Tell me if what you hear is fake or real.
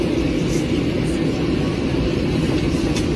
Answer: real